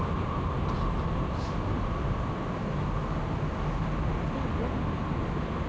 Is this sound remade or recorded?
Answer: recorded